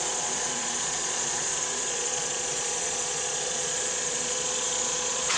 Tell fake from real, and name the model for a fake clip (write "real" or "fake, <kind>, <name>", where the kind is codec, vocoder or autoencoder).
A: fake, vocoder, Vocos